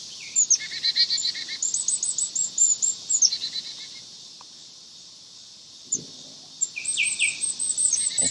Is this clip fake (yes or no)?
no